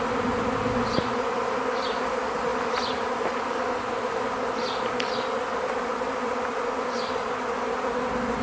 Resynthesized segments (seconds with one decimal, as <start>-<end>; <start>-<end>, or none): 0.0-8.4